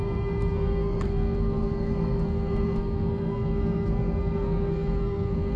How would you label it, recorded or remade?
remade